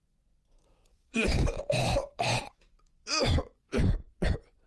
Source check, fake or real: fake